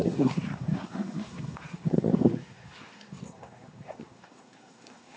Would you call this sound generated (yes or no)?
yes